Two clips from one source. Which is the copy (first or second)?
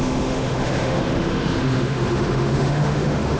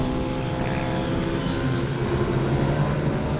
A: first